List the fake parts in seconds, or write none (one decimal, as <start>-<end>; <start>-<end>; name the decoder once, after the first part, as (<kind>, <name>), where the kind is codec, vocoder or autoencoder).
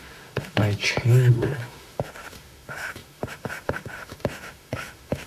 0.0-0.6 (autoencoder, DAC-VAE); 1.3-5.3